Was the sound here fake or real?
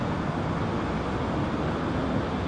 real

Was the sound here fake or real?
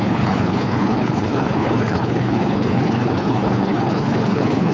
fake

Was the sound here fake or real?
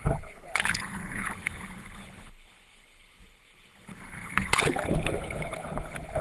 fake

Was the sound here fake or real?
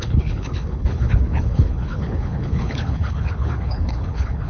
fake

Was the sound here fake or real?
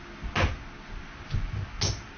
real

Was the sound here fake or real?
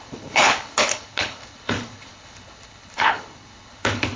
fake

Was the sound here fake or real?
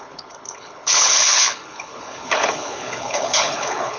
fake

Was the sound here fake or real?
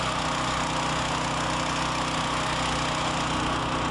real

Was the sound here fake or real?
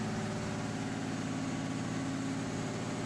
real